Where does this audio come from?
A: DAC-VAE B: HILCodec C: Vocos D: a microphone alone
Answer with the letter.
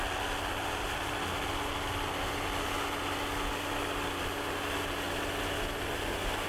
D